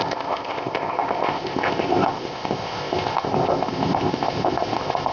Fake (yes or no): yes